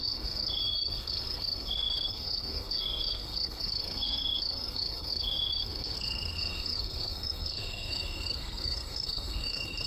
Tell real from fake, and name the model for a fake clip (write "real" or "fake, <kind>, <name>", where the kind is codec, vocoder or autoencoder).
fake, codec, SNAC